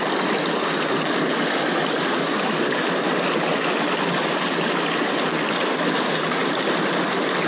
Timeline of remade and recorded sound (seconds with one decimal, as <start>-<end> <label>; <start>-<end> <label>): 0.0-7.5 recorded